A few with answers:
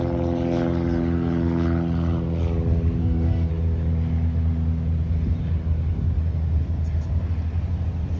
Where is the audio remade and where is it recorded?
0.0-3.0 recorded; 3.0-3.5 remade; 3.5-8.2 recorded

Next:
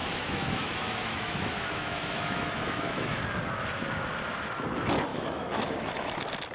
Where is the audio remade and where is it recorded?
0.0-3.2 remade; 3.2-5.1 recorded; 5.1-6.1 remade; 6.1-6.5 recorded

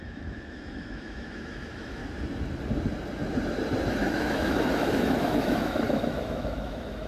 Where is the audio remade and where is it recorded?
0.0-2.0 remade; 2.0-3.9 recorded; 3.9-7.1 remade